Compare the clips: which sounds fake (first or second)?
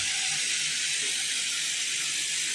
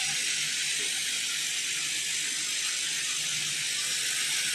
first